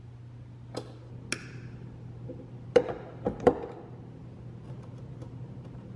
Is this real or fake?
real